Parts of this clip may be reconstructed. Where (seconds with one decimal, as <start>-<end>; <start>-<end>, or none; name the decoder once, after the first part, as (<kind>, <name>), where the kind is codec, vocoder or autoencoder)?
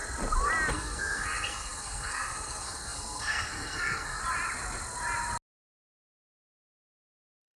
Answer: 0.7-4.2 (codec, SNAC); 6.1-7.6